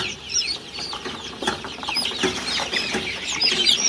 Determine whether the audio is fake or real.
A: fake